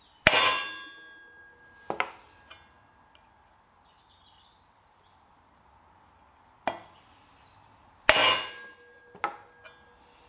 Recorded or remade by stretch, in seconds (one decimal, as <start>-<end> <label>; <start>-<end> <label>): 0.0-10.3 recorded